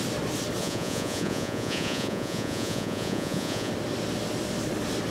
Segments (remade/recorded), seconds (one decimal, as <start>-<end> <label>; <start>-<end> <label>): 0.0-0.6 recorded; 0.6-3.7 remade; 3.7-5.1 recorded